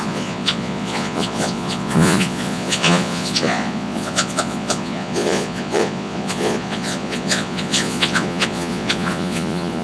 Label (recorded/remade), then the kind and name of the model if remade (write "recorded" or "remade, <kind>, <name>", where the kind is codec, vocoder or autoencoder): remade, vocoder, Vocos